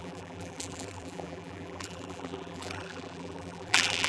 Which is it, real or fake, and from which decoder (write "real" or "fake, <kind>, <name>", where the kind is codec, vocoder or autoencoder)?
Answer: fake, vocoder, BigVGAN v2